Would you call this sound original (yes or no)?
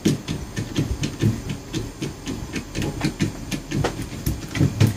yes